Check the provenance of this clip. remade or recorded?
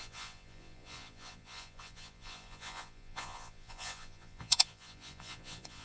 remade